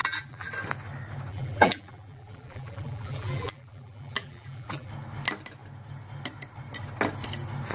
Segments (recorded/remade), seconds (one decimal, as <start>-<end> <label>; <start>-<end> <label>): 0.0-0.5 remade; 0.5-1.3 recorded; 1.3-4.9 remade; 4.9-7.7 recorded